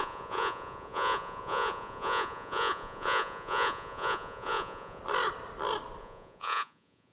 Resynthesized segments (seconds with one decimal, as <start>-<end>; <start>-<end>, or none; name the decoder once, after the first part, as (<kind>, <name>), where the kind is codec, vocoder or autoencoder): 0.0-5.0 (vocoder, Vocos); 6.0-7.1